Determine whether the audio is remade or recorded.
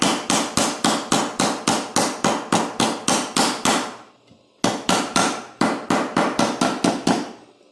recorded